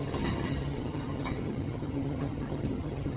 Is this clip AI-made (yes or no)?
yes